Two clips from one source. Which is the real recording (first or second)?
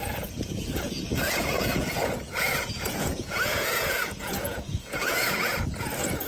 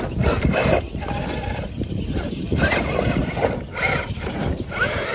second